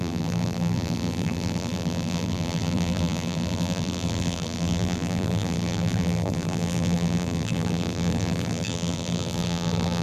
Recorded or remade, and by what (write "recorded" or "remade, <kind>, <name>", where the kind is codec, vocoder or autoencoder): remade, vocoder, BigVGAN v2